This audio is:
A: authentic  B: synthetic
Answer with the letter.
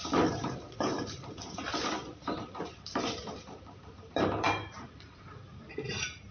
B